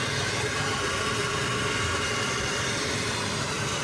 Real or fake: real